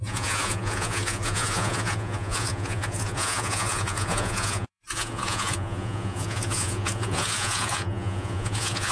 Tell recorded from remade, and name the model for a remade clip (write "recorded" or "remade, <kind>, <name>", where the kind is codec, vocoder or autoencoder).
remade, vocoder, Vocos